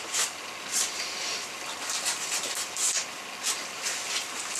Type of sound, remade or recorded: recorded